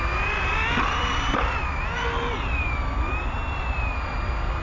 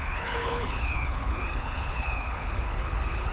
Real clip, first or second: first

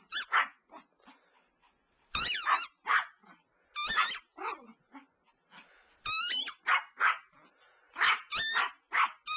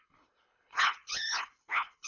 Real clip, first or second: first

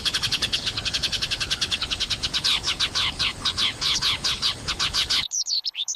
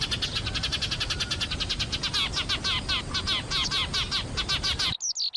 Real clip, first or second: second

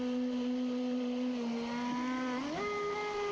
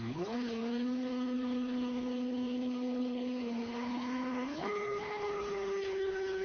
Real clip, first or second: first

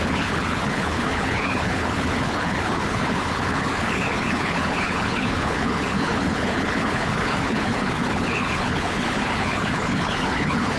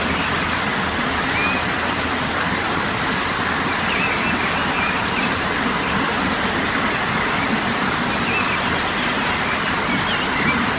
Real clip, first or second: second